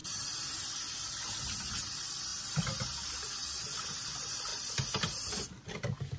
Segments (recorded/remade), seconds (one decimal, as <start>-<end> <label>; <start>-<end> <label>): 0.0-4.5 recorded; 4.5-5.3 remade; 5.3-6.2 recorded